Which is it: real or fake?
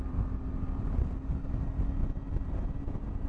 real